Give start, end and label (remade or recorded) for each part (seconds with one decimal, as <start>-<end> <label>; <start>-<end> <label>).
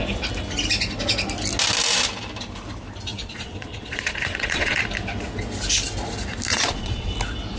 0.0-3.1 recorded; 3.1-4.8 remade; 4.8-6.5 recorded; 6.5-7.1 remade; 7.1-7.6 recorded